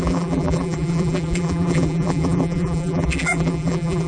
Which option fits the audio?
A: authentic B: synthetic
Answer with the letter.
B